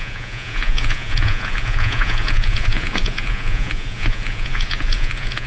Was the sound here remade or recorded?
remade